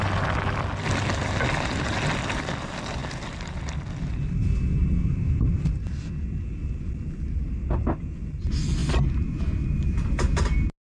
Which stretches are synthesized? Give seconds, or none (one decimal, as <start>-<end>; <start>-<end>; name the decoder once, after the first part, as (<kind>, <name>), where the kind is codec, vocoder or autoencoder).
none